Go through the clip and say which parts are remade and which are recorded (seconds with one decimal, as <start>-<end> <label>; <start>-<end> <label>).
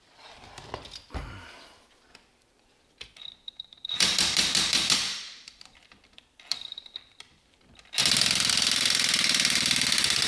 0.0-8.0 remade; 8.0-8.5 recorded; 8.5-10.3 remade